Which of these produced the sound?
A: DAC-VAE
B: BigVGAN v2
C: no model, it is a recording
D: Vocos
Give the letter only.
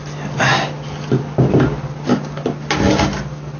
C